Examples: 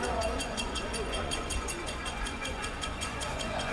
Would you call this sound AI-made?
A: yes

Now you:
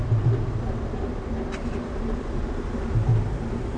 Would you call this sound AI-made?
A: no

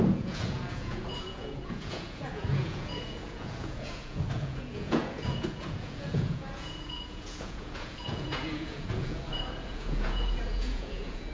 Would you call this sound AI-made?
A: yes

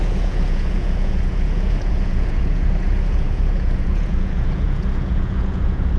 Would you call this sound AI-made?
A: yes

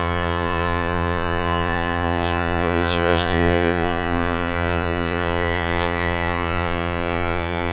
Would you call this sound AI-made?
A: yes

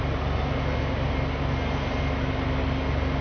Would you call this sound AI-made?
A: no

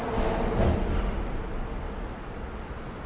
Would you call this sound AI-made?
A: no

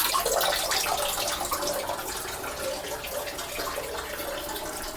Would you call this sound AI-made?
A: no